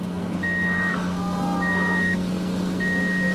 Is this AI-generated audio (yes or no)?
yes